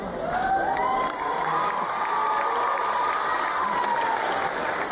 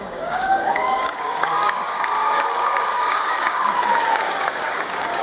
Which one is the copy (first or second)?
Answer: second